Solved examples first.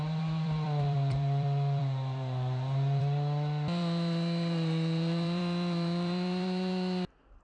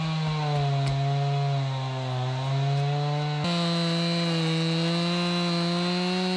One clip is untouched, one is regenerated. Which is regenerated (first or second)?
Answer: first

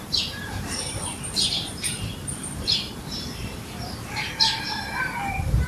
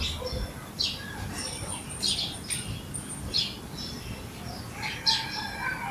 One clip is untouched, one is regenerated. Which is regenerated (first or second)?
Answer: first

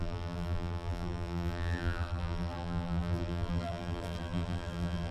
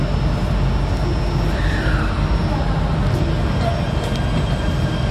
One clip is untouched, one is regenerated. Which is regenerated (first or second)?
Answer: first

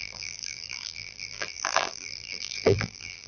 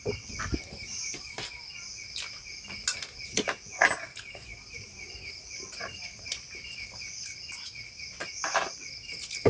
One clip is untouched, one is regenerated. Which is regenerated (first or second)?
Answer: first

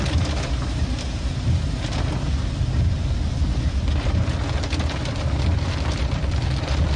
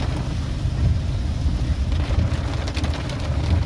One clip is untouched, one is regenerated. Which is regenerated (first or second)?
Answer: second